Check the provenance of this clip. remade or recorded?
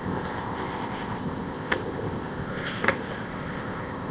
remade